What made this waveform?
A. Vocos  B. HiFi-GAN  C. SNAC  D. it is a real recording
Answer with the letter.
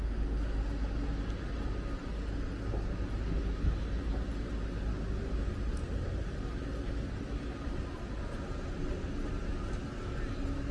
D